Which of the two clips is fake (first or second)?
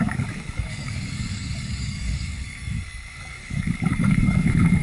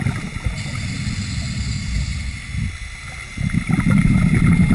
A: first